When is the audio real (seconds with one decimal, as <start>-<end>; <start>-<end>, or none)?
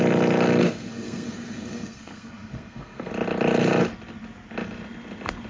0.0-0.6; 3.1-5.5